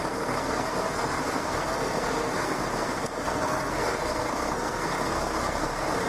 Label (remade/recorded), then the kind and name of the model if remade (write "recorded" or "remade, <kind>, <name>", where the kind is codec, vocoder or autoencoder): remade, codec, SNAC